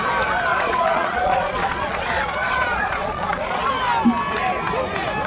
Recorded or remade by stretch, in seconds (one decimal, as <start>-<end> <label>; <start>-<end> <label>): 0.0-0.5 recorded; 0.5-3.7 remade; 3.7-5.3 recorded